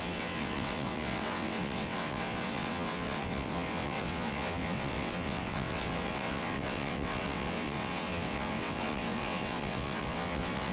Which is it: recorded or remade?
remade